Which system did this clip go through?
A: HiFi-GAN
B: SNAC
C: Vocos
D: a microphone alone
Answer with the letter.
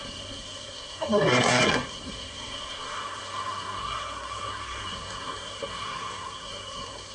B